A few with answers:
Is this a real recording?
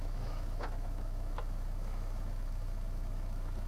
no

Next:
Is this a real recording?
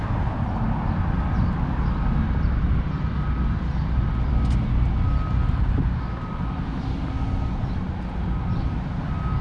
yes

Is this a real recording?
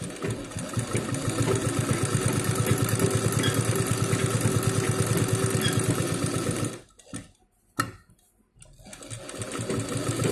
yes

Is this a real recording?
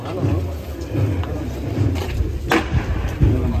yes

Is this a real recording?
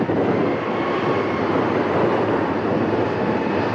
yes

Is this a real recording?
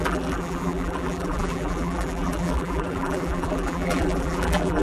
no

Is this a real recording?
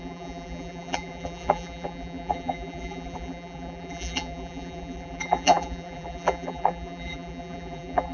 no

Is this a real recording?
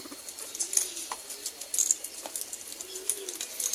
yes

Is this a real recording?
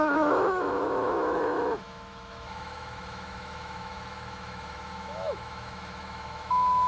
no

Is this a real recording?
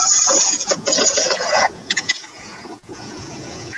no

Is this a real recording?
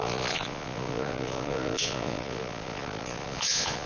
no